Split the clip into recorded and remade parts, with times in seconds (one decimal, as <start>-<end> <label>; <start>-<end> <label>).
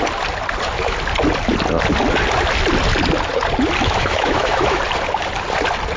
0.0-3.8 recorded; 3.8-4.8 remade; 4.8-6.0 recorded